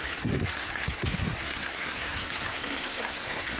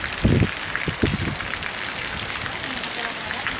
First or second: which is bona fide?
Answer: second